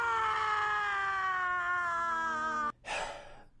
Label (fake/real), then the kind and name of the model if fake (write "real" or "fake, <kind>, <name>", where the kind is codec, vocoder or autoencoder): real